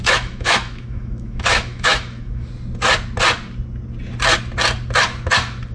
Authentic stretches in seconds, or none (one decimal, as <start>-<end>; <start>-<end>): 2.5-5.7